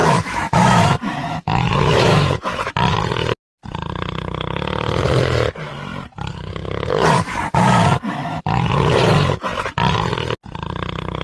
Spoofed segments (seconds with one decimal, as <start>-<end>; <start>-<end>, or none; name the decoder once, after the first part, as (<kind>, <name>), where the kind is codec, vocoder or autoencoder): 0.0-2.7 (autoencoder, DAC-VAE)